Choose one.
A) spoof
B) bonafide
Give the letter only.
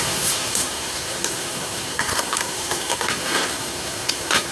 A